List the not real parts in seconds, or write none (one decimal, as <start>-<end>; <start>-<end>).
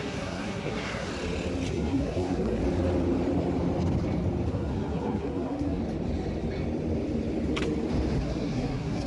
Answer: 0.0-1.1; 1.7-2.6; 4.5-5.8; 8.2-9.1